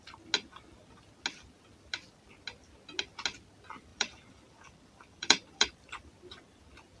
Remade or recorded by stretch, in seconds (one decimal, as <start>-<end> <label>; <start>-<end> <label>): 0.0-3.9 recorded; 3.9-6.1 remade; 6.1-7.0 recorded